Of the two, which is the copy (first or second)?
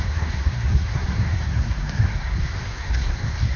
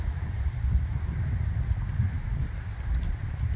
first